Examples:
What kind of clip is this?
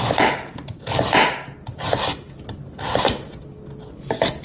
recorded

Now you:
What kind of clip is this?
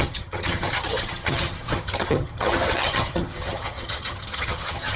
remade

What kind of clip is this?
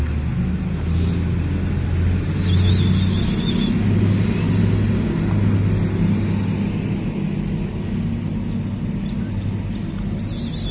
recorded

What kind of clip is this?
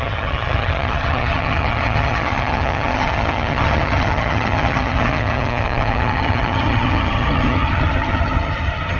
remade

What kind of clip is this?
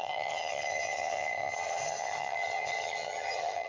remade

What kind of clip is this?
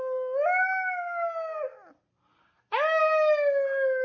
recorded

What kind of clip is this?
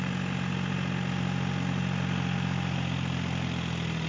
recorded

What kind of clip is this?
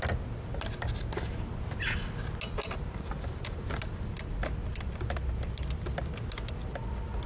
recorded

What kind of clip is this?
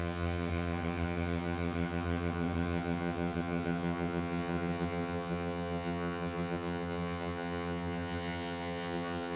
remade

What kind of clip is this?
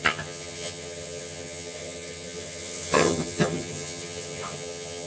remade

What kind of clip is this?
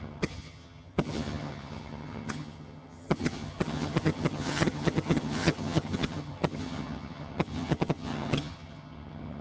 remade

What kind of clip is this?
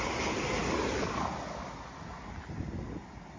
recorded